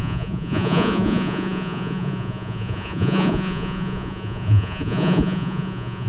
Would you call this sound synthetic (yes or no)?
yes